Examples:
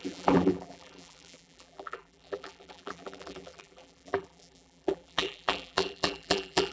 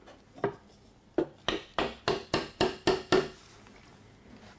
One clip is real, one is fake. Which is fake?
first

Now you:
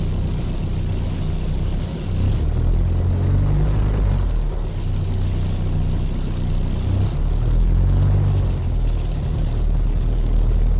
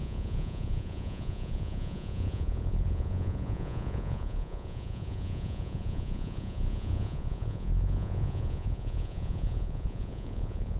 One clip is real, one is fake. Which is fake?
second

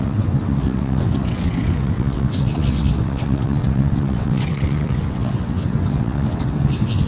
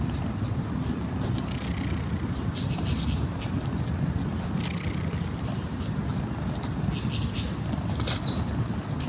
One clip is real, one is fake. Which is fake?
first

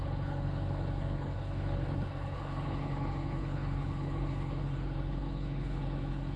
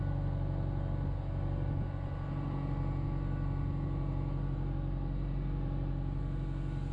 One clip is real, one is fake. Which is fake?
first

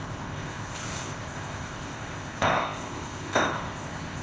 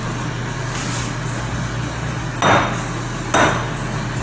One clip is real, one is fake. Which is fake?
first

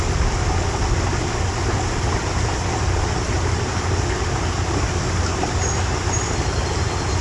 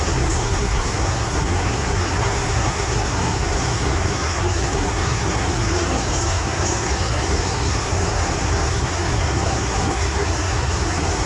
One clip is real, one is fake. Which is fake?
second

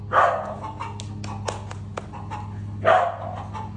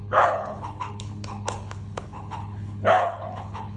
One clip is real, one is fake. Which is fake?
second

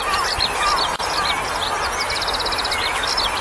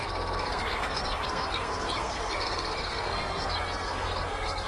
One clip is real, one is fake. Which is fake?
second